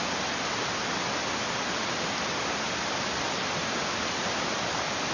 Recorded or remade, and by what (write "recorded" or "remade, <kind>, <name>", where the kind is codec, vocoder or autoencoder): recorded